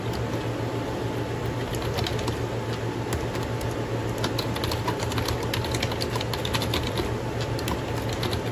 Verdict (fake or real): real